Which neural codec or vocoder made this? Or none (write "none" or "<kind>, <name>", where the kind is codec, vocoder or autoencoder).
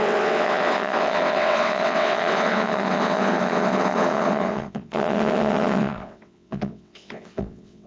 vocoder, WaveNeXt